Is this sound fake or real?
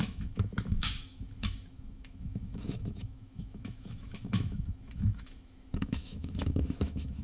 fake